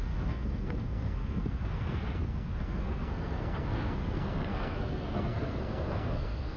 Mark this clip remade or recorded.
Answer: remade